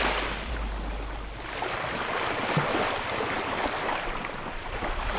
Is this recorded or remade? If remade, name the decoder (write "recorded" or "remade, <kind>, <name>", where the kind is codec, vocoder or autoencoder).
recorded